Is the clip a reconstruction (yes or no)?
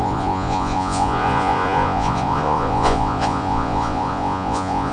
yes